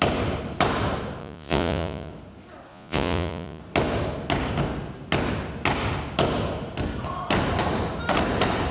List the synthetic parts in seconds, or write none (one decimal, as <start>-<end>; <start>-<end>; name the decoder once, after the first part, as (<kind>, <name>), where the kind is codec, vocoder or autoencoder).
1.2-2.1 (vocoder, Vocos); 2.7-3.6

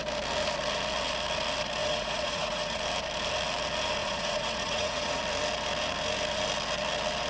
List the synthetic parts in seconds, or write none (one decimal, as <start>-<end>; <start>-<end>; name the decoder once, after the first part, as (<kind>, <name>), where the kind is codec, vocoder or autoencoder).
1.8-2.8 (vocoder, Vocos); 4.0-5.2

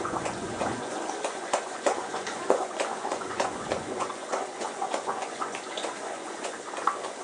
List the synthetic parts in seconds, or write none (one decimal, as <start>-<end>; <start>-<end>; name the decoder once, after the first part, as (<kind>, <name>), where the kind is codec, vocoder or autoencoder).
0.0-7.2 (vocoder, Vocos)

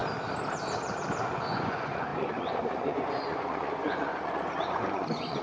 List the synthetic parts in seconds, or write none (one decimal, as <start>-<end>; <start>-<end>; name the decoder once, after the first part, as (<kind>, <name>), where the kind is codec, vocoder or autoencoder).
1.2-5.4 (vocoder, Vocos)